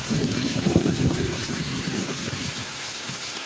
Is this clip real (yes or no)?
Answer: no